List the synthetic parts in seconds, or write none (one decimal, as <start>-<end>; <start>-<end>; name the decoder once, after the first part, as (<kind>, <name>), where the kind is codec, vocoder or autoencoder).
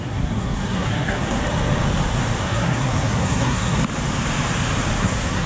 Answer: 0.0-1.4 (codec, SNAC); 2.4-3.8; 5.0-5.5